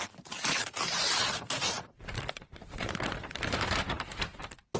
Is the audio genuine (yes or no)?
no